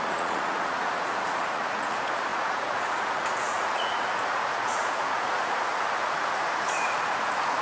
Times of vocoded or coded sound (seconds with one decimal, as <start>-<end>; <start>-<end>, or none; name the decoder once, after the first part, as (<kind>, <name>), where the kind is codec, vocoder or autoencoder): 0.0-7.6 (vocoder, Vocos)